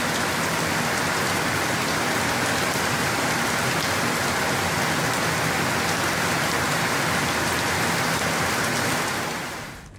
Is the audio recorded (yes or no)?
yes